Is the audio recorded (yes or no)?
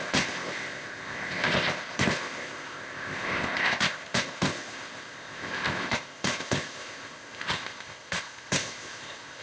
no